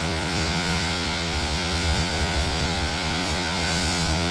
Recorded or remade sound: remade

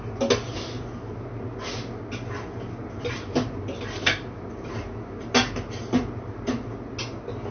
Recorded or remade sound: recorded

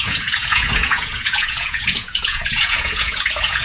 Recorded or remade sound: remade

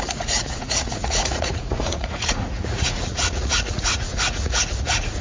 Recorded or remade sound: remade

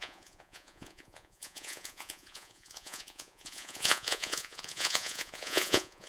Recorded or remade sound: remade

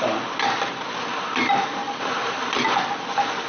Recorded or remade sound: recorded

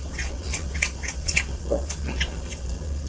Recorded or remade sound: remade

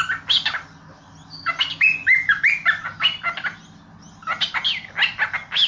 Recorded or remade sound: recorded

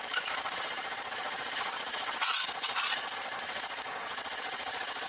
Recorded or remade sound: remade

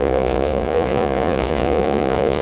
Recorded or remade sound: remade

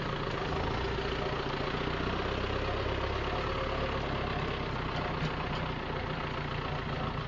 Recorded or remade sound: recorded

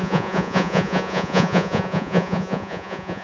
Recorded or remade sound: remade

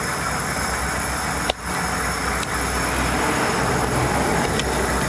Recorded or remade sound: recorded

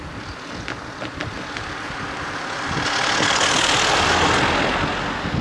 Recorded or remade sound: recorded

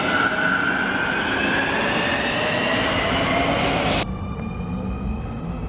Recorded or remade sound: recorded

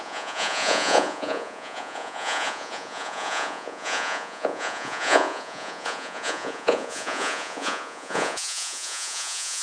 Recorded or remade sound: remade